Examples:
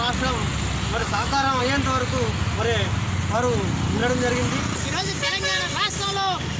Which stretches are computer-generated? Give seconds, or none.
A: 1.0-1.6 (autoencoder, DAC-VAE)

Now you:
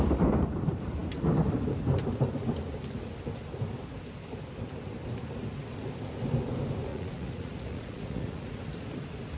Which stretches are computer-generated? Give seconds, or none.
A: 6.9-8.6 (vocoder, Vocos)

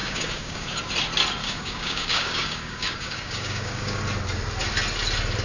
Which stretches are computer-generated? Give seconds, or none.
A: 0.0-0.8 (codec, DAC); 1.4-4.0

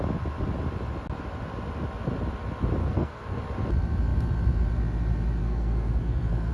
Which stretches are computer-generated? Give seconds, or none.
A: 2.8-3.4 (codec, SNAC); 5.4-6.5

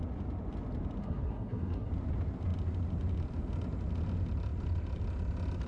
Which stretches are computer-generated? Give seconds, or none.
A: 1.0-1.9 (codec, SNAC)

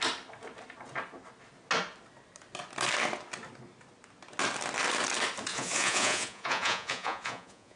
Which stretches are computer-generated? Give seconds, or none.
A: 5.5-7.8 (vocoder, Vocos)